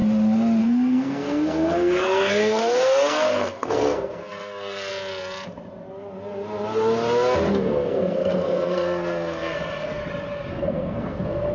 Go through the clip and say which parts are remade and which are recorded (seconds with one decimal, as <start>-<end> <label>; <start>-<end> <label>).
0.0-0.6 recorded; 0.6-4.9 remade; 4.9-7.5 recorded; 7.5-10.0 remade; 10.0-10.5 recorded; 10.5-11.5 remade